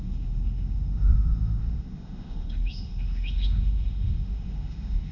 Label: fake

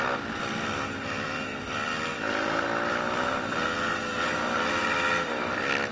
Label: real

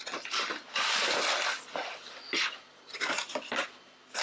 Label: real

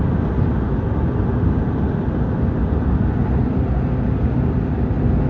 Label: real